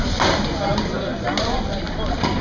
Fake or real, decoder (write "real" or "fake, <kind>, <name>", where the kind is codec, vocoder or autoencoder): real